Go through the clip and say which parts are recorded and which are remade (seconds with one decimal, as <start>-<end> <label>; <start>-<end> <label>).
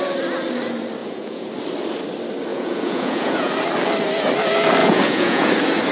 0.0-1.0 recorded; 1.0-1.5 remade; 1.5-2.5 recorded; 2.5-3.5 remade; 3.5-4.8 recorded; 4.8-5.5 remade; 5.5-5.9 recorded